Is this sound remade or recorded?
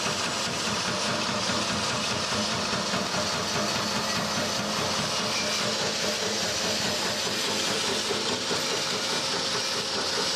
recorded